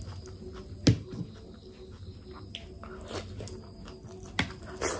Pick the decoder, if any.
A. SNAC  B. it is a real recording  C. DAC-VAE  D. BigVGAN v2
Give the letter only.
B